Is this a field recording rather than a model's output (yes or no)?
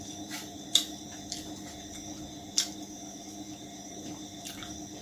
yes